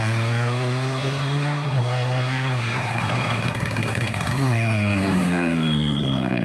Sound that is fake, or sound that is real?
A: fake